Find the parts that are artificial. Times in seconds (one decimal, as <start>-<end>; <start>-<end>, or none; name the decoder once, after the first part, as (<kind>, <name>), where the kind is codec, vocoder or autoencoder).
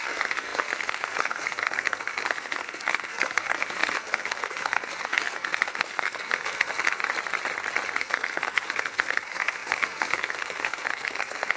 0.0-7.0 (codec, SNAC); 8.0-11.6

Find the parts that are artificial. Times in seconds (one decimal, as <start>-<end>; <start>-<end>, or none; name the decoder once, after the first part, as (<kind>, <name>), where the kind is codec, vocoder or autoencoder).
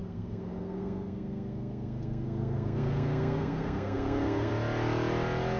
0.0-4.5 (codec, SNAC)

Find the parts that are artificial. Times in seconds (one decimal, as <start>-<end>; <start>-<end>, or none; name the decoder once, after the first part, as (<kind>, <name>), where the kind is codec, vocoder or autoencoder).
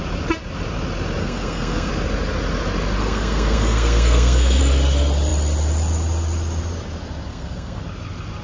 1.2-1.9 (codec, SNAC); 3.0-4.6; 7.3-7.8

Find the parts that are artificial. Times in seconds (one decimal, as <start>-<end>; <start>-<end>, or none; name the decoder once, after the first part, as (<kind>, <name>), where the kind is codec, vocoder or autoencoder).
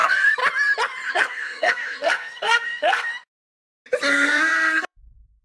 0.0-0.4 (codec, SNAC); 1.1-3.1; 4.1-5.4